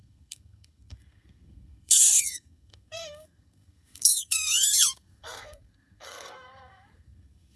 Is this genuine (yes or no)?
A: no